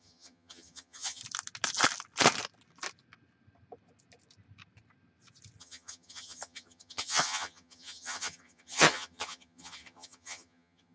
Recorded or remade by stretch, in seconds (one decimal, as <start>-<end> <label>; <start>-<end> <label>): 0.0-1.2 remade; 1.2-5.6 recorded; 5.6-10.9 remade